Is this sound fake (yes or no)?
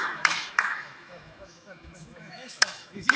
yes